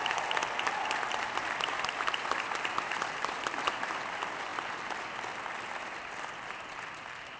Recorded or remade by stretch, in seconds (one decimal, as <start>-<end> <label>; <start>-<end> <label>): 0.0-0.4 recorded; 0.4-3.6 remade; 3.6-4.5 recorded; 4.5-5.7 remade; 5.7-7.4 recorded